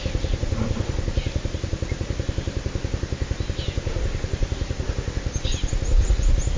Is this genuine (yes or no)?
yes